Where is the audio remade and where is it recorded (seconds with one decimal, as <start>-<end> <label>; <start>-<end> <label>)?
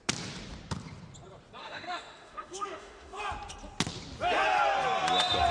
0.0-1.6 recorded; 1.6-3.2 remade; 3.2-5.5 recorded